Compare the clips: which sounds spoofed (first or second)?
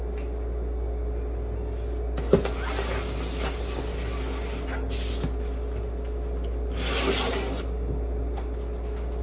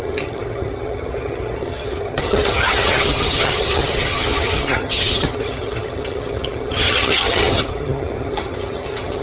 second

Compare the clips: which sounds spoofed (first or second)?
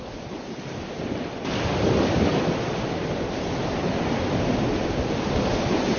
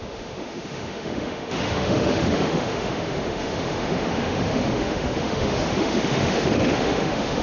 second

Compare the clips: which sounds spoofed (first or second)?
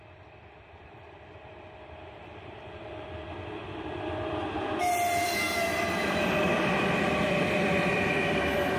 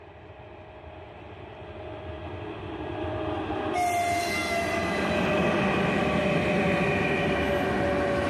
first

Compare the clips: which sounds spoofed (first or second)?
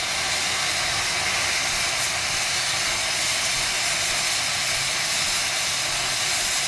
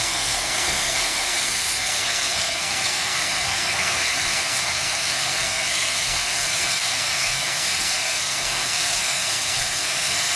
second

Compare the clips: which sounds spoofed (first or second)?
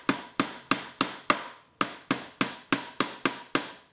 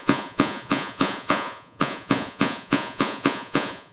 second